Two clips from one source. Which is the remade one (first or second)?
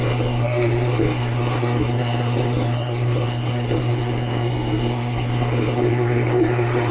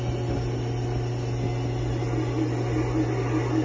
first